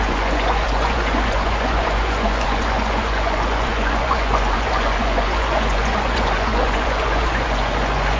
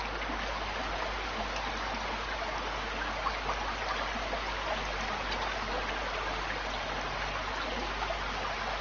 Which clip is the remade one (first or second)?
first